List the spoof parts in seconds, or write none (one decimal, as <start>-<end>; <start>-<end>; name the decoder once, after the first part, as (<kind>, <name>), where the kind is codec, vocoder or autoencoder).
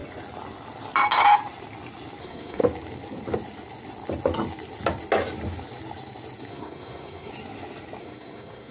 2.2-2.6 (codec, SNAC); 6.5-7.3; 8.0-8.7